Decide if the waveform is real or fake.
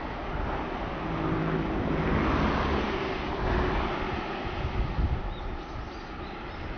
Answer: real